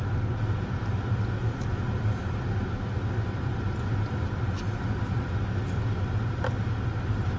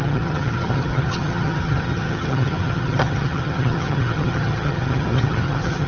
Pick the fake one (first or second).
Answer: second